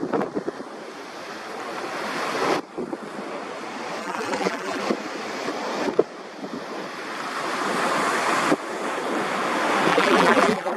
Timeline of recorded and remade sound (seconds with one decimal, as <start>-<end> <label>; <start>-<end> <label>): 0.0-4.0 recorded; 4.0-4.8 remade; 4.8-9.9 recorded; 9.9-10.8 remade